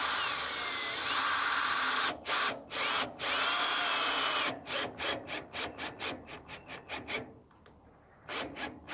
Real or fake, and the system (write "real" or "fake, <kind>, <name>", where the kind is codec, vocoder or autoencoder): real